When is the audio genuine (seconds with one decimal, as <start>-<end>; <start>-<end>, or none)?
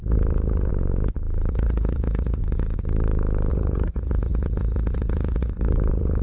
0.7-1.5; 2.4-3.5